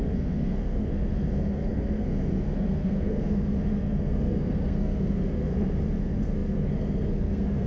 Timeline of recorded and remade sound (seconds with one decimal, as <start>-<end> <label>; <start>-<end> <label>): 0.0-7.7 remade